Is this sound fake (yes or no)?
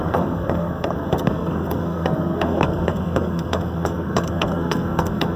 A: yes